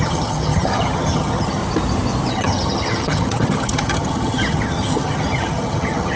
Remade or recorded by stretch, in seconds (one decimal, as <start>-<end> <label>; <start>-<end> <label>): 0.0-1.6 remade; 1.6-2.3 recorded; 2.3-6.2 remade